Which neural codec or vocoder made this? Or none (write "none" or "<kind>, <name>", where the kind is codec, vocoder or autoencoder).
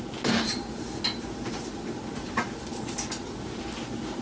none